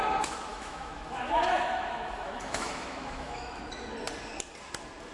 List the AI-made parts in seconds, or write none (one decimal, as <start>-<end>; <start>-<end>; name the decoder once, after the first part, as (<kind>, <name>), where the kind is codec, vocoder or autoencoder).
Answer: 0.5-3.6 (autoencoder, DAC-VAE)